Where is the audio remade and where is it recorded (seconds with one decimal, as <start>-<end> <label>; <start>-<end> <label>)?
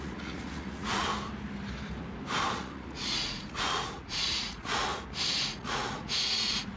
0.0-1.1 remade; 1.1-2.5 recorded; 2.5-4.9 remade; 4.9-5.4 recorded; 5.4-6.8 remade